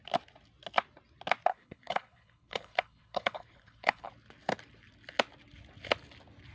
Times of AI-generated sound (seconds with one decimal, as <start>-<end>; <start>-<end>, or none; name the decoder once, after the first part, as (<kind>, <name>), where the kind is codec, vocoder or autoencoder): 1.5-4.1 (codec, HILCodec)